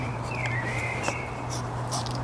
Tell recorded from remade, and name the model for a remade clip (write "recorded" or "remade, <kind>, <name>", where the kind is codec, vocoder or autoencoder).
remade, vocoder, BigVGAN v2